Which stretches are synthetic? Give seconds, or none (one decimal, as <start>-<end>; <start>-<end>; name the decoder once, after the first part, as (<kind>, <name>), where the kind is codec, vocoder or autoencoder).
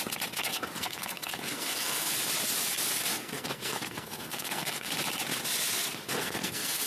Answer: 0.5-2.1 (codec, SNAC); 3.1-4.9; 6.2-6.9